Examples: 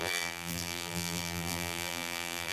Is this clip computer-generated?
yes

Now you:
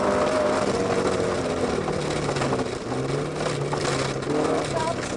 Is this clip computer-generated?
no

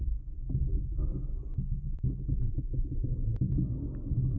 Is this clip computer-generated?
no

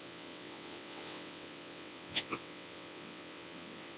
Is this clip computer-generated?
yes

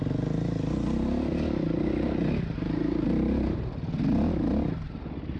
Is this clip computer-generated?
no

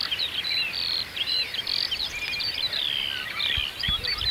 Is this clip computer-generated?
no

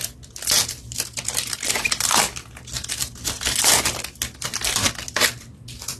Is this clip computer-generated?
no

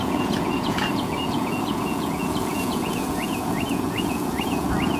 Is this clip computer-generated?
yes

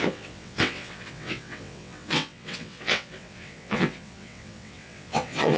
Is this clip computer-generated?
yes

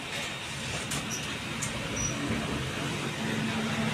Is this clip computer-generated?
no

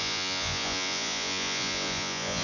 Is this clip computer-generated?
yes